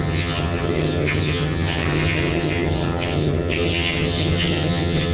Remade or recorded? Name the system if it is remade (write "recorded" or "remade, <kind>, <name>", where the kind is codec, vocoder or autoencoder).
remade, vocoder, HiFi-GAN